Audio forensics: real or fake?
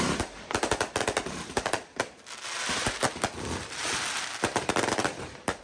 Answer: fake